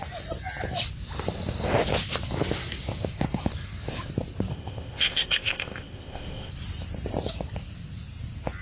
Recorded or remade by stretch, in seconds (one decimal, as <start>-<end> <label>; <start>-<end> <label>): 0.0-4.5 recorded; 4.5-6.5 remade; 6.5-8.6 recorded